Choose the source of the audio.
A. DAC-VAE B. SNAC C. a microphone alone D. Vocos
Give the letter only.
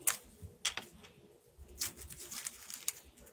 C